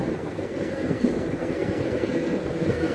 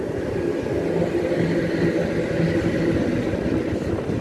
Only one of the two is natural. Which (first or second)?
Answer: second